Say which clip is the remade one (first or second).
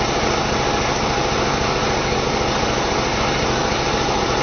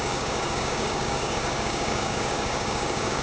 second